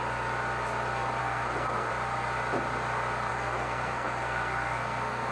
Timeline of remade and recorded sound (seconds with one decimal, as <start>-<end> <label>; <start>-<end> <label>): 0.0-1.2 recorded; 1.2-1.9 remade; 1.9-3.3 recorded; 3.3-5.3 remade